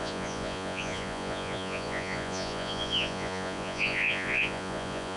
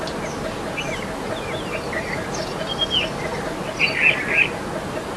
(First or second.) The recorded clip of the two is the second